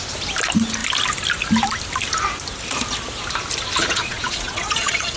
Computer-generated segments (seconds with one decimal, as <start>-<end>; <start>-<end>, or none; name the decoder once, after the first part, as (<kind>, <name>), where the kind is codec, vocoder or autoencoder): 3.8-5.2 (vocoder, Vocos)